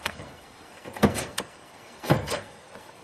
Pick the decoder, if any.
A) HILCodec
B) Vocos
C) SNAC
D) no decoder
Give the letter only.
C